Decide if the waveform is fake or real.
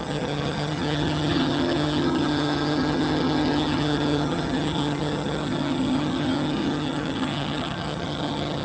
fake